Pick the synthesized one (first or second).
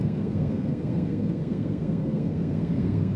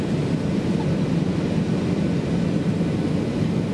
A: first